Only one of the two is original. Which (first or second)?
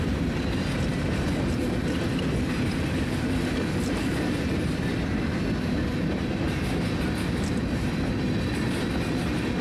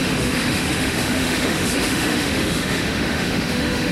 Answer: first